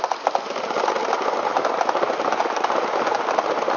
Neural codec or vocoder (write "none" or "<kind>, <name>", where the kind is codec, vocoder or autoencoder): none